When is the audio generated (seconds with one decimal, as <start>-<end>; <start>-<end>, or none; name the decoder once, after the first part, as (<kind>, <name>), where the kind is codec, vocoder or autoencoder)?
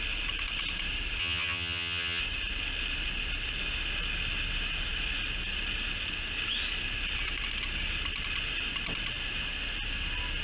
1.2-2.2 (vocoder, HiFi-GAN)